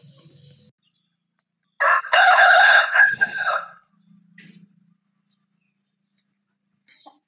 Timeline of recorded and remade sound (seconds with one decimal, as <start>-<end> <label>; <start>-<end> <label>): 0.0-2.0 recorded; 2.0-3.9 remade; 3.9-7.3 recorded